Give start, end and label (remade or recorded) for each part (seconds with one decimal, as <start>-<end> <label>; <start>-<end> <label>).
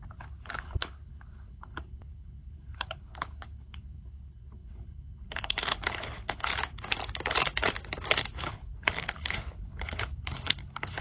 0.0-6.5 remade; 6.5-8.4 recorded; 8.4-11.0 remade